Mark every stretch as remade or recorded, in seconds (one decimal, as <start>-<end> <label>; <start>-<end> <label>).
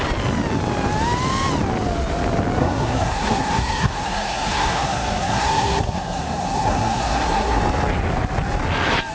0.0-2.6 recorded; 2.6-7.6 remade; 7.6-9.1 recorded